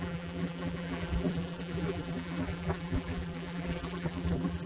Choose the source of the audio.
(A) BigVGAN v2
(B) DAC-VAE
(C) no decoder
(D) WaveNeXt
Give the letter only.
A